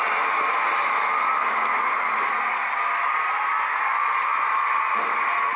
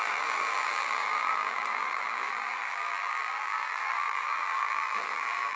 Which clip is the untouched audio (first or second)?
first